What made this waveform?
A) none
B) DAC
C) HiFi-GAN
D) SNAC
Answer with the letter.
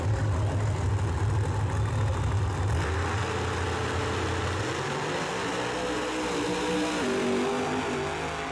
A